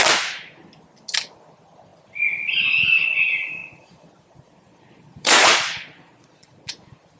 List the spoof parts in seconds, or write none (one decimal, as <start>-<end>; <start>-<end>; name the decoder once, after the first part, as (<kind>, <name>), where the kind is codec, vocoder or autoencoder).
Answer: 3.6-6.7 (vocoder, Vocos)